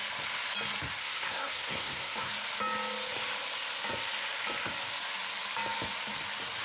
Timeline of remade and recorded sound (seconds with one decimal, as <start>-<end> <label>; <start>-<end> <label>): 0.0-1.0 recorded; 1.0-2.3 remade; 2.3-6.6 recorded